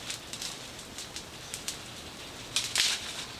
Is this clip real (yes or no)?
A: yes